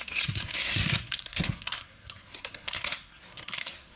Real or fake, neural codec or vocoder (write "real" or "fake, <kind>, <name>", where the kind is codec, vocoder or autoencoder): fake, codec, SNAC